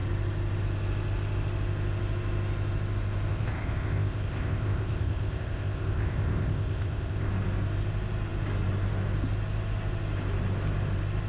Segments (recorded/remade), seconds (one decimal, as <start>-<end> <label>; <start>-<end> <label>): 0.0-3.3 recorded; 3.3-7.3 remade; 7.3-11.3 recorded

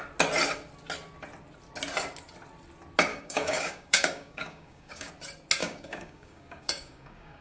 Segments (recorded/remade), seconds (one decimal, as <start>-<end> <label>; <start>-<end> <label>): 0.0-3.1 recorded; 3.1-5.1 remade; 5.1-5.6 recorded; 5.6-7.4 remade

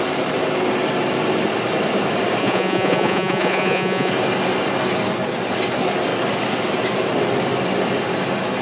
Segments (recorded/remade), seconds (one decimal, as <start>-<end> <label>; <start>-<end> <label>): 0.0-2.4 recorded; 2.4-4.1 remade; 4.1-8.6 recorded

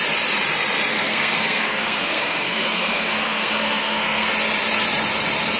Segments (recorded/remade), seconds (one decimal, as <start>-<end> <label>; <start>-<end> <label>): 0.0-0.9 recorded; 0.9-4.3 remade; 4.3-5.6 recorded

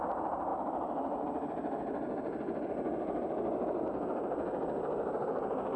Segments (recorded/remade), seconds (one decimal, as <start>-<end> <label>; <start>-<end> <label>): 0.0-5.8 recorded

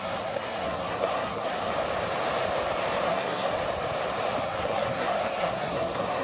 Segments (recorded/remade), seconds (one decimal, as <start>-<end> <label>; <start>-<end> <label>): 0.0-1.7 remade; 1.7-3.1 recorded; 3.1-3.5 remade; 3.5-4.4 recorded; 4.4-6.2 remade